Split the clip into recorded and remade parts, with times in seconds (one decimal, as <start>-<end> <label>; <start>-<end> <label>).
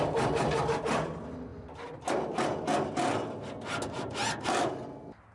0.0-5.3 recorded